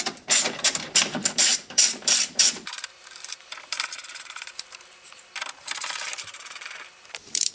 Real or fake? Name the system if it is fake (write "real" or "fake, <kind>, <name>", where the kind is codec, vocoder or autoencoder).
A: fake, vocoder, BigVGAN v2